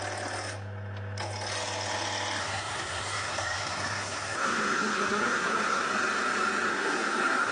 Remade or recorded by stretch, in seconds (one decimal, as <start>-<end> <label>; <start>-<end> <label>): 0.0-2.4 recorded; 2.4-5.9 remade; 5.9-6.7 recorded; 6.7-7.5 remade